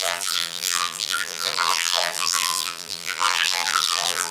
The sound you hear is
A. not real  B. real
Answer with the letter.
A